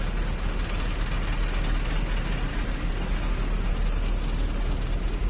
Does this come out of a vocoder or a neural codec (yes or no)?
no